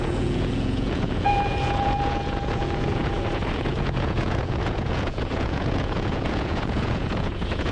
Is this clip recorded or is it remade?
remade